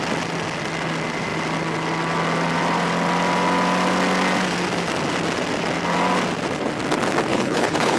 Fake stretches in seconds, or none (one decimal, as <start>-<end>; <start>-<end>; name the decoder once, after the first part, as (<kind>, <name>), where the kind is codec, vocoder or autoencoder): 7.3-8.0 (codec, HILCodec)